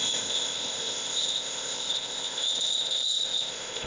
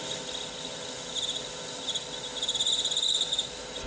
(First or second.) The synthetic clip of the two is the first